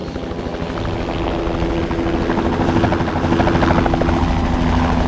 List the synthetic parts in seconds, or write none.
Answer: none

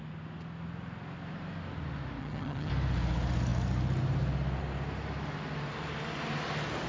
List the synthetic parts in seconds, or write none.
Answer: 2.2-2.7 (vocoder, HiFi-GAN)

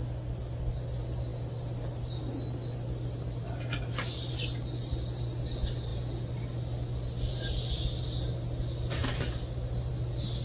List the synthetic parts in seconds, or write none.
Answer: none

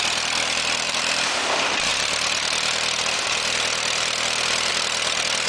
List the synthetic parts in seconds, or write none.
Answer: 0.0-5.5 (vocoder, BigVGAN v2)

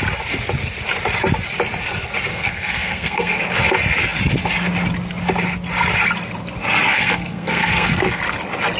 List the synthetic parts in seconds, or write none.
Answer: 2.3-3.4 (codec, SNAC); 6.9-8.2

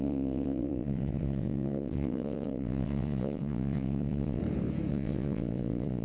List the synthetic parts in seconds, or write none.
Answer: 0.0-4.4 (vocoder, WaveNeXt); 4.9-6.0

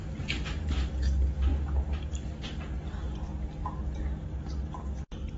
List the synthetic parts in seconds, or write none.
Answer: none

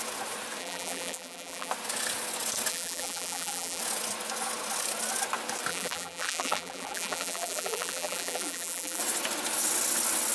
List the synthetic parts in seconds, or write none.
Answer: 0.6-1.7 (vocoder, BigVGAN v2); 2.7-3.8; 5.7-9.0